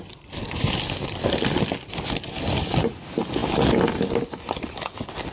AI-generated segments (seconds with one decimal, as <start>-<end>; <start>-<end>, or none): none